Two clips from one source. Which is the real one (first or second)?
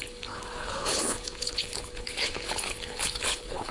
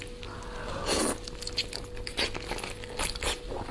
second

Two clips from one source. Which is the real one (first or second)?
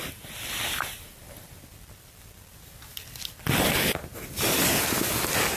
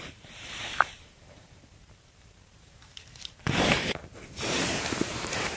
first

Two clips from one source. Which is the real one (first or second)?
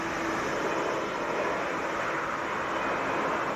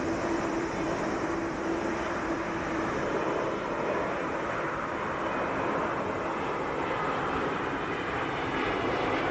first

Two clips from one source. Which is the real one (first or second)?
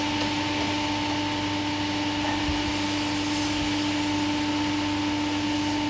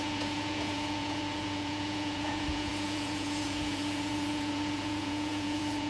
first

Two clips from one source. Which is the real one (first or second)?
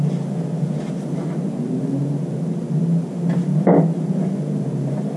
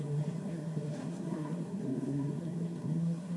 first